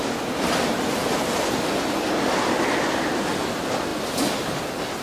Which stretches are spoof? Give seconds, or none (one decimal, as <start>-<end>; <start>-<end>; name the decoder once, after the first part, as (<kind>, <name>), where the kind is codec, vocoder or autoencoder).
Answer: none